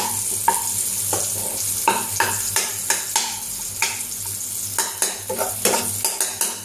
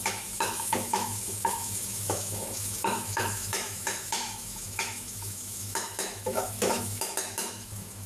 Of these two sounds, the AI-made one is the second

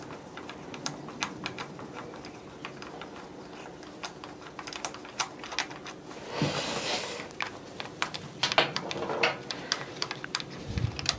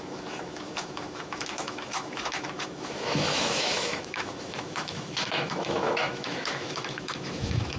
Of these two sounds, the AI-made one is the second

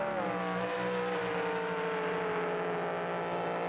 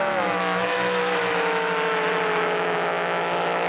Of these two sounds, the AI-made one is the second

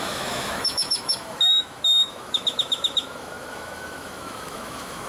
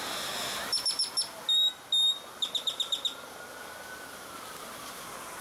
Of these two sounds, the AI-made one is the first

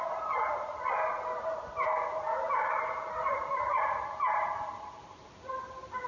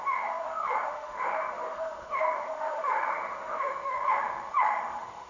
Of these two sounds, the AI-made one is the second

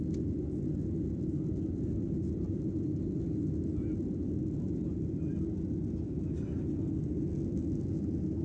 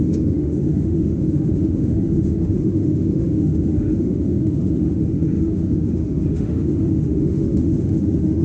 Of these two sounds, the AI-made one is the second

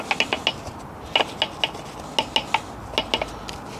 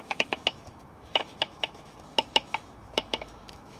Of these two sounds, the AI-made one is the second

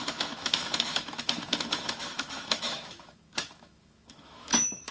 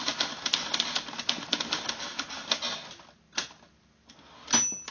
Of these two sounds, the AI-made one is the first